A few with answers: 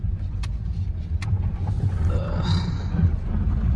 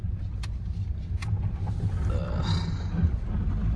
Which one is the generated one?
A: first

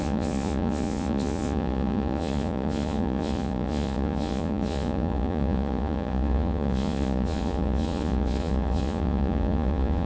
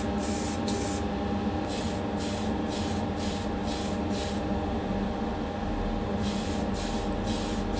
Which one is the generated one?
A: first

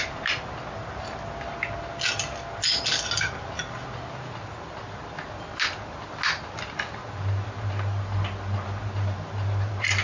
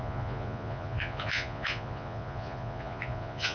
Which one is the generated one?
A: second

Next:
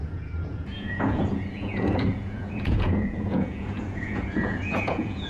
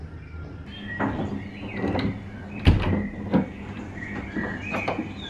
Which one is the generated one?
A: first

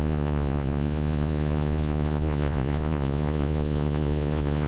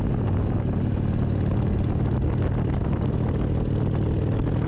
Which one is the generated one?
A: first